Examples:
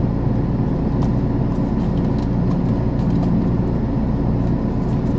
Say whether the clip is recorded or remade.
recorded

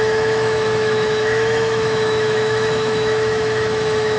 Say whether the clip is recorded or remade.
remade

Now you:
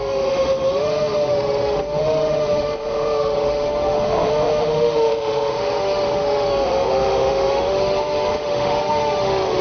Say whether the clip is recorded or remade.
remade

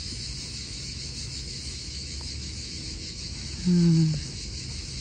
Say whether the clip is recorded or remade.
remade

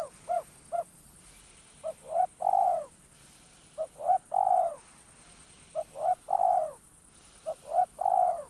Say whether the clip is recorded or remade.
recorded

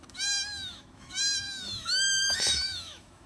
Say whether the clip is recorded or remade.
remade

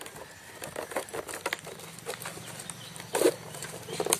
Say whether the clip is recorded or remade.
recorded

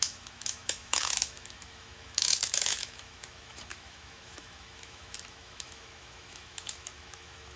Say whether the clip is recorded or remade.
remade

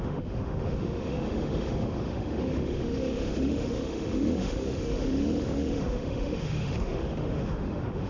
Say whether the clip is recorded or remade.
remade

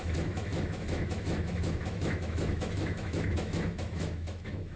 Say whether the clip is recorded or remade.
remade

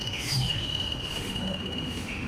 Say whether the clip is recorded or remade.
remade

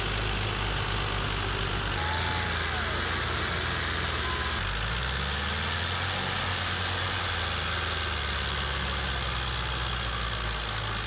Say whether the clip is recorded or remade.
recorded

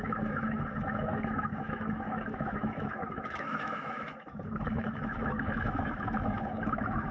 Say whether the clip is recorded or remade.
remade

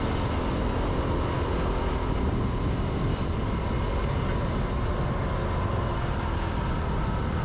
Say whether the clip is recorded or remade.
recorded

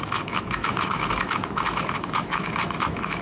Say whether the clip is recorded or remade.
remade